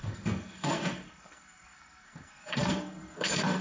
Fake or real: fake